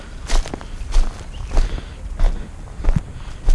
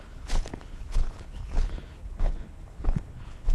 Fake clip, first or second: second